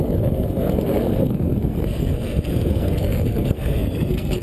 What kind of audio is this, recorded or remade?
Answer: remade